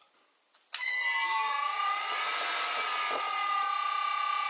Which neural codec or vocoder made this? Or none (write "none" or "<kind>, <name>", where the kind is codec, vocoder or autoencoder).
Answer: none